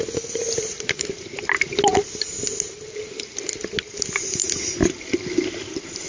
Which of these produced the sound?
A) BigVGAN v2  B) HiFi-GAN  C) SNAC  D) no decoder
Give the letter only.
D